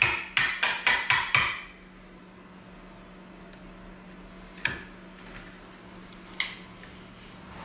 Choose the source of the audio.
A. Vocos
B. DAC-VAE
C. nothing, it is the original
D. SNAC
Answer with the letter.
C